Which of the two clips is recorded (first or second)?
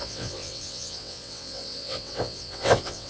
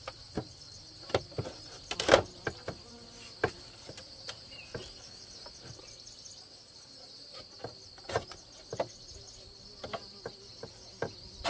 second